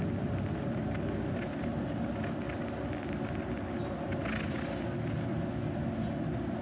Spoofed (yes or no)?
no